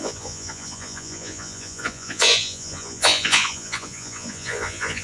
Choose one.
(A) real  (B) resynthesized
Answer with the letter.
B